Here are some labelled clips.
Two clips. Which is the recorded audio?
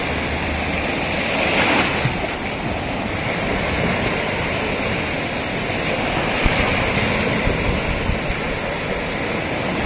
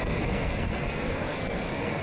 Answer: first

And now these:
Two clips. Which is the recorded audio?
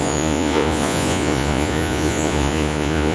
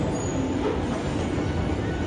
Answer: second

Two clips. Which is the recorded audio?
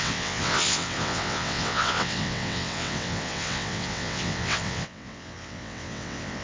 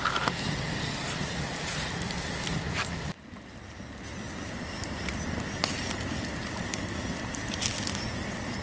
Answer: second